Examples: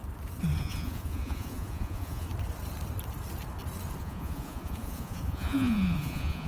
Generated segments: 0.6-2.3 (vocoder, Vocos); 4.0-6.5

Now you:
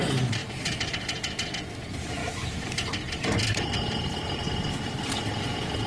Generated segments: none

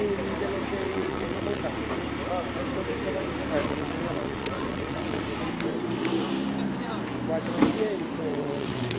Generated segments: 0.8-1.6 (vocoder, WaveNeXt); 3.6-5.2; 8.3-9.0

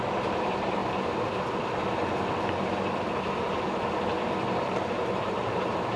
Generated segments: 0.0-0.8 (vocoder, BigVGAN v2); 4.4-6.0

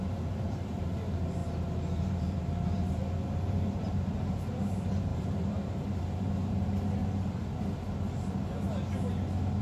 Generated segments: 0.0-1.4 (vocoder, BigVGAN v2); 2.0-3.0; 3.5-7.0